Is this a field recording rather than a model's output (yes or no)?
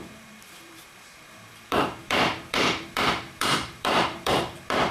no